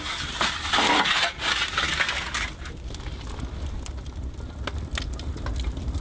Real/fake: real